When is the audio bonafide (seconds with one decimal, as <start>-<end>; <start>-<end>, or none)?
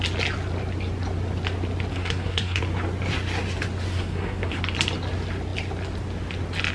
0.0-1.9; 2.6-3.9; 4.6-6.7